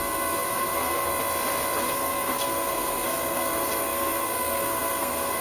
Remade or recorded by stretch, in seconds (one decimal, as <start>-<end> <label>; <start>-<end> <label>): 0.0-1.1 remade; 1.1-1.8 recorded; 1.8-5.4 remade